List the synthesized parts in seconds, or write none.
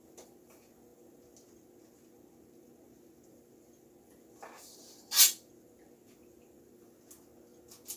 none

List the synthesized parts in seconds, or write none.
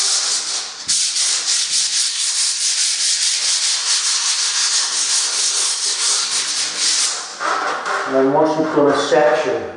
2.1-2.6 (codec, SNAC); 3.8-6.5